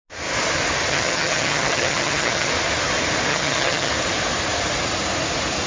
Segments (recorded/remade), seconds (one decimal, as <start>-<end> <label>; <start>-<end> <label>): 0.0-0.9 recorded; 0.9-2.5 remade; 2.5-3.3 recorded; 3.3-3.9 remade; 3.9-5.7 recorded